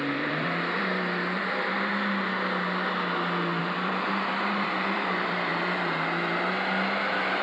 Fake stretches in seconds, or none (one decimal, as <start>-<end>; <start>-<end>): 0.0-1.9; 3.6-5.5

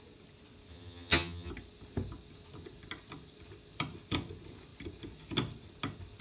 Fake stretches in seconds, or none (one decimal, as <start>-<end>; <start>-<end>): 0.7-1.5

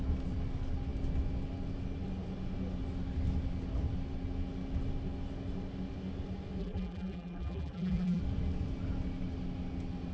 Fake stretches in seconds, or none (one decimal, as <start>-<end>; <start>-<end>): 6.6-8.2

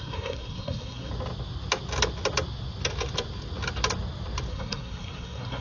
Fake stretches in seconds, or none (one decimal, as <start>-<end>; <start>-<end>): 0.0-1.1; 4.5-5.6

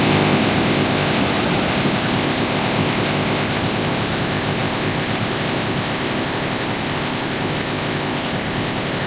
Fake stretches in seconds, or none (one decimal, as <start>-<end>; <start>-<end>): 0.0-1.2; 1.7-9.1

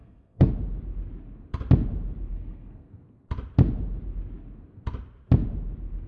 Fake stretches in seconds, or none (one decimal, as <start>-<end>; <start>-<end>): 0.0-0.5; 2.3-2.9

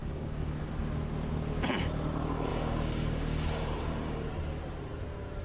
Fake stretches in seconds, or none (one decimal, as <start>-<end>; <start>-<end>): 0.0-0.7; 2.5-4.3